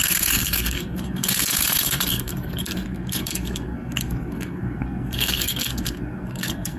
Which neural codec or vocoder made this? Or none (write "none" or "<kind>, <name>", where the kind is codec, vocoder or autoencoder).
codec, SNAC